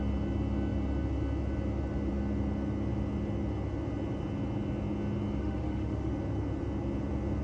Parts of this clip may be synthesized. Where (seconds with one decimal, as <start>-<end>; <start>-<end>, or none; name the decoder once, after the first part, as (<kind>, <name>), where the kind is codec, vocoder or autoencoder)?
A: 5.4-6.1 (autoencoder, DAC-VAE)